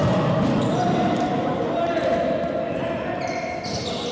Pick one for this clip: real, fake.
real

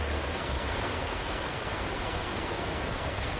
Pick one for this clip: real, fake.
fake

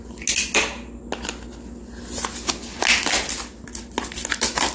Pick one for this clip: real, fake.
real